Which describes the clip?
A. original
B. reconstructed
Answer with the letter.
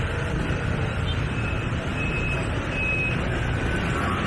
A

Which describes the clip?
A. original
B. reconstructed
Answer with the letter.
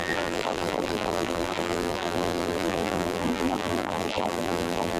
B